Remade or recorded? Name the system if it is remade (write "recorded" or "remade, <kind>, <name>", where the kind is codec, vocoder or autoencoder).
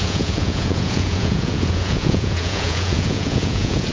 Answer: remade, vocoder, Vocos